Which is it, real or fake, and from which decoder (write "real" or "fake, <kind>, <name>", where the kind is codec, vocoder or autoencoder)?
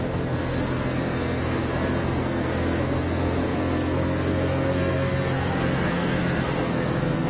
fake, codec, SNAC